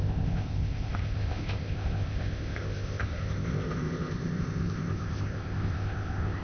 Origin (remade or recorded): remade